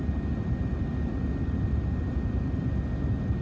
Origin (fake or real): real